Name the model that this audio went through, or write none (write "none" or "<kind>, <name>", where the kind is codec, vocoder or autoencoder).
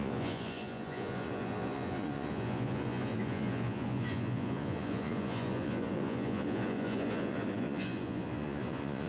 vocoder, Vocos